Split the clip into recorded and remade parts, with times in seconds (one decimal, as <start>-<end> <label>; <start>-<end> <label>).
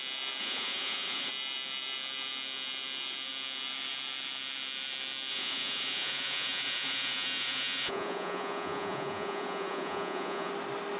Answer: 0.0-0.4 recorded; 0.4-1.3 remade; 1.3-5.3 recorded; 5.3-10.5 remade; 10.5-11.0 recorded